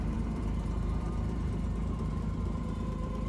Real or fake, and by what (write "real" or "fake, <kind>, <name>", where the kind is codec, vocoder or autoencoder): fake, vocoder, BigVGAN v2